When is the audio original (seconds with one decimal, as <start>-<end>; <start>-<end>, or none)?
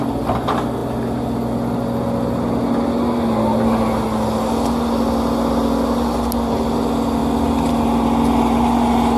0.0-9.2